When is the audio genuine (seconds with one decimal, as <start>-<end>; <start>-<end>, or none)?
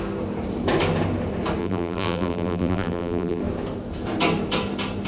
0.0-1.6; 3.4-5.1